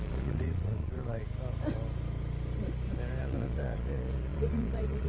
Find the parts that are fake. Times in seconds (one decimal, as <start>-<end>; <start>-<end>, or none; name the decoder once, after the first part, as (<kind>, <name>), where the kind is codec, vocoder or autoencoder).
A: 0.0-1.2 (vocoder, Vocos); 3.2-5.1